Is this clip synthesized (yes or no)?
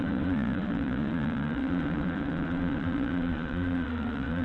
yes